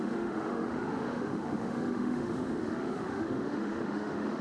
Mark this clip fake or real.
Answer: fake